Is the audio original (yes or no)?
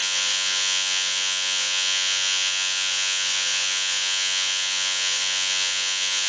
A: no